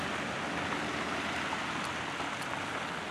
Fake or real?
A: real